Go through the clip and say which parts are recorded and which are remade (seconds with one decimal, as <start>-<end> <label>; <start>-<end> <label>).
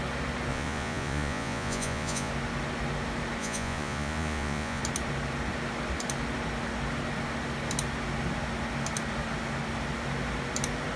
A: 0.0-0.5 recorded; 0.5-2.3 remade; 2.3-3.4 recorded; 3.4-4.8 remade; 4.8-11.0 recorded